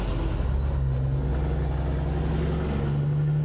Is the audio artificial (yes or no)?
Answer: no